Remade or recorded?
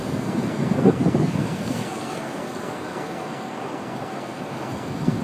remade